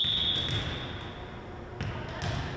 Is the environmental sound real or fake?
real